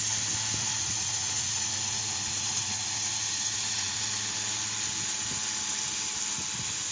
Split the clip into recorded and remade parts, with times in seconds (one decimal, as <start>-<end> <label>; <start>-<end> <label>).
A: 0.0-0.7 recorded; 0.7-4.1 remade; 4.1-6.9 recorded